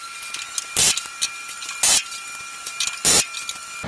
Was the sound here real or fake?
real